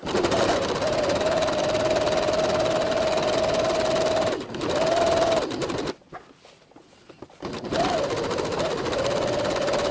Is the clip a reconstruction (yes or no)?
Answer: no